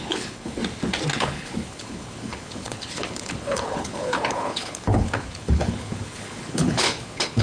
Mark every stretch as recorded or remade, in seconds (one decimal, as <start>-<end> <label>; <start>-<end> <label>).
0.0-0.6 remade; 0.6-1.2 recorded; 1.2-7.4 remade